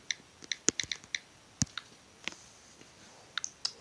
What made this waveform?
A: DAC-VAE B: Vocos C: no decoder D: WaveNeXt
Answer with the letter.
C